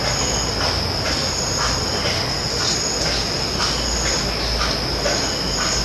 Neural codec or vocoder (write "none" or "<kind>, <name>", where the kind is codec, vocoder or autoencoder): none